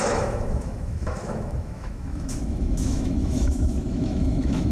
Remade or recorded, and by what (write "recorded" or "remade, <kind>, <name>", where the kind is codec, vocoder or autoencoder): remade, autoencoder, DAC-VAE